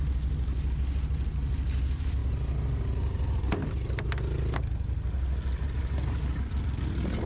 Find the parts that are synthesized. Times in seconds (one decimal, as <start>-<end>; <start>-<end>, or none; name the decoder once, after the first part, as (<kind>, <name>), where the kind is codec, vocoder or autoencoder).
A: none